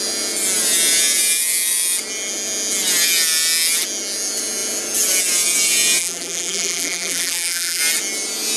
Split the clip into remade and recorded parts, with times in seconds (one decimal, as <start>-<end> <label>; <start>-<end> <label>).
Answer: 0.0-6.0 recorded; 6.0-7.8 remade; 7.8-8.6 recorded